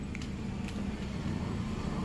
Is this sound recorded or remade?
recorded